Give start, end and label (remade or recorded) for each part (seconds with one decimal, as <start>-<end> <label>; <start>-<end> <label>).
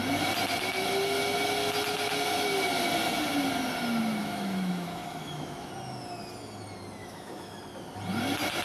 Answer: 0.0-4.2 recorded; 4.2-5.7 remade; 5.7-7.0 recorded; 7.0-7.6 remade; 7.6-8.6 recorded